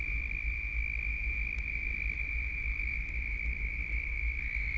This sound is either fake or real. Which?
real